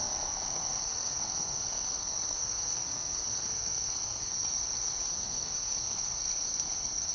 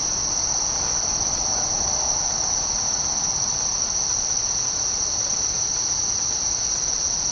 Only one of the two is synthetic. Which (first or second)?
first